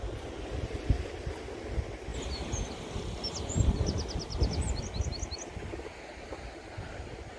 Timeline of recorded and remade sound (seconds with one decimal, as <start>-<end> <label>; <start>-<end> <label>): 0.0-7.4 recorded